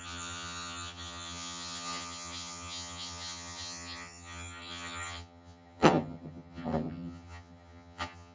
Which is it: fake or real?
fake